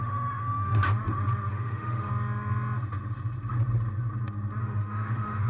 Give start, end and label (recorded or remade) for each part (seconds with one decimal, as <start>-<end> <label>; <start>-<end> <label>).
0.0-0.8 remade; 0.8-1.5 recorded; 1.5-2.1 remade; 2.1-4.6 recorded; 4.6-5.5 remade